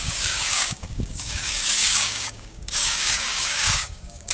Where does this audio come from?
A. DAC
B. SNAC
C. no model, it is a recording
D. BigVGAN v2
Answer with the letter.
A